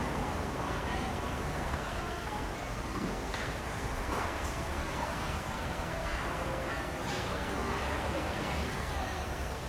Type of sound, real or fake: fake